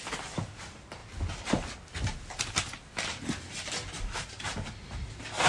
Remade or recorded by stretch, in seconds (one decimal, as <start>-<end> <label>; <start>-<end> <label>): 0.0-5.5 recorded